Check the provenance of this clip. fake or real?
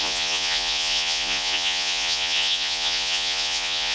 fake